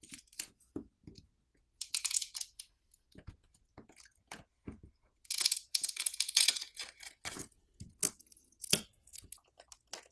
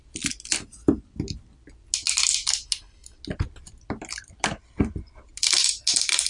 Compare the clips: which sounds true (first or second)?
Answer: second